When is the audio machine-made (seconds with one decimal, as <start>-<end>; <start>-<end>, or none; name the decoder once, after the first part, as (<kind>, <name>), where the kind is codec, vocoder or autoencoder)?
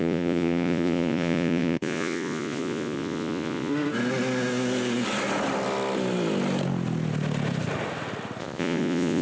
0.0-3.7 (vocoder, Vocos); 8.4-9.2